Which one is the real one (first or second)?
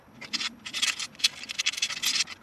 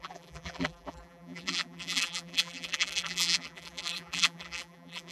first